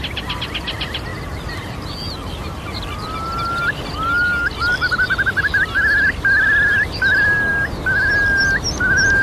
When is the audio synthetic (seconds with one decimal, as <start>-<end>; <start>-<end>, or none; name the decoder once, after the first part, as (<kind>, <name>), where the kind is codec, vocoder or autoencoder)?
0.0-1.1 (vocoder, BigVGAN v2); 6.1-7.5; 8.4-9.2